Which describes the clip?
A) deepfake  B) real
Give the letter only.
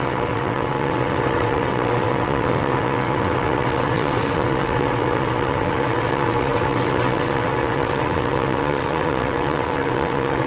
A